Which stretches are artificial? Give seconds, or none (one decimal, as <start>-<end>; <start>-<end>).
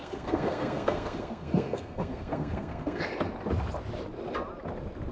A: 0.0-3.1